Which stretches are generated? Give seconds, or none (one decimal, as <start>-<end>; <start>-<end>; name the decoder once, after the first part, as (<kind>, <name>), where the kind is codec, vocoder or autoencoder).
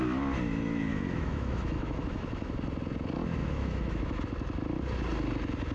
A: 0.9-2.5 (autoencoder, DAC-VAE); 3.4-4.2